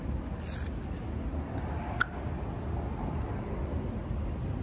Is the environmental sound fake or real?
real